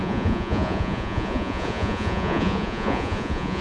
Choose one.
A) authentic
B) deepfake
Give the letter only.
B